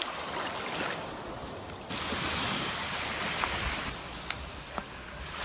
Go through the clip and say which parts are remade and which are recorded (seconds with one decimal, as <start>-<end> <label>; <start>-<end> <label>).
0.0-5.4 recorded